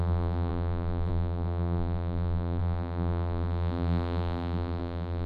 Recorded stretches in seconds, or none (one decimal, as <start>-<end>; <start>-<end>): none